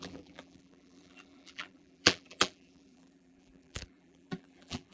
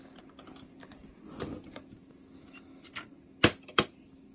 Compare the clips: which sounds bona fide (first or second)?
second